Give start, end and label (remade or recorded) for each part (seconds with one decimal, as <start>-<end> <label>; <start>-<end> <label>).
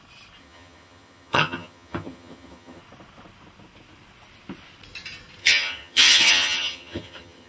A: 0.0-0.4 recorded; 0.4-2.8 remade; 2.8-5.4 recorded; 5.4-7.5 remade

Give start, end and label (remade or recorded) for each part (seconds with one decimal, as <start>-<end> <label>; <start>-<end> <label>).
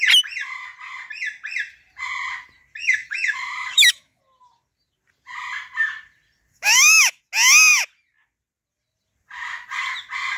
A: 0.0-2.8 recorded; 2.8-4.2 remade; 4.2-6.5 recorded; 6.5-7.2 remade; 7.2-10.4 recorded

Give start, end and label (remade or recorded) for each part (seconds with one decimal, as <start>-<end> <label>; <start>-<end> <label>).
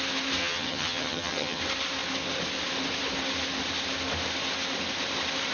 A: 0.0-0.4 recorded; 0.4-1.6 remade; 1.6-5.5 recorded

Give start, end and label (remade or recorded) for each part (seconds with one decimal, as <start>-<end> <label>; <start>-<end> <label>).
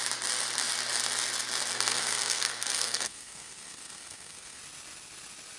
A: 0.0-1.7 recorded; 1.7-4.6 remade; 4.6-5.6 recorded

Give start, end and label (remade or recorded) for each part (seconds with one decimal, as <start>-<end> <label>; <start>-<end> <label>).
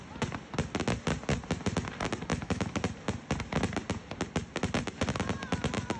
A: 0.0-2.3 recorded; 2.3-2.8 remade; 2.8-6.0 recorded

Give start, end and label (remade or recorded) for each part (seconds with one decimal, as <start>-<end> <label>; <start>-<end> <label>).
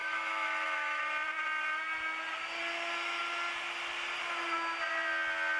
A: 0.0-1.0 remade; 1.0-5.6 recorded